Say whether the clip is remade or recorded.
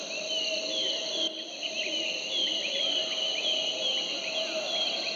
recorded